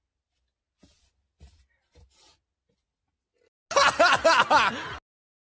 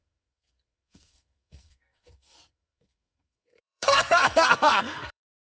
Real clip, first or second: first